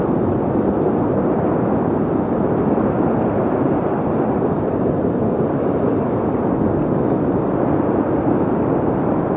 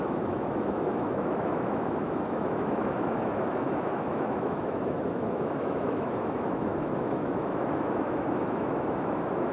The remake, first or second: second